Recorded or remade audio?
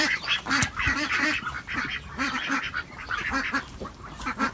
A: remade